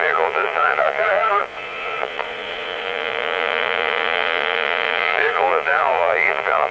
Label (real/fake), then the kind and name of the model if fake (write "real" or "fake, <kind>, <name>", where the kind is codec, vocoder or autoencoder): fake, vocoder, Vocos